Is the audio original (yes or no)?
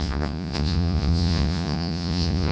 no